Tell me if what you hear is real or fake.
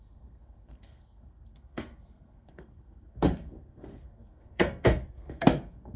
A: fake